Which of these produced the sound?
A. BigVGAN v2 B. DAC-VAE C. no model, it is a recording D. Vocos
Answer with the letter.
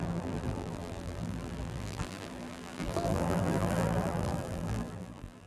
A